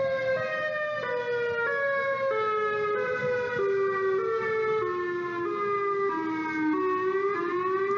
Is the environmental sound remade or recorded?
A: recorded